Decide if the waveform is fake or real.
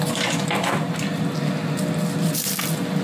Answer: real